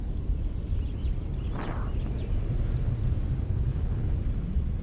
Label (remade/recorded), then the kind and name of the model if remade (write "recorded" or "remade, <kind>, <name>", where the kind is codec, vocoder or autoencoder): recorded